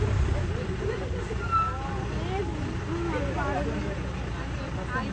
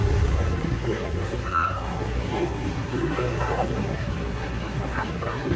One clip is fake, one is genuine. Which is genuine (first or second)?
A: first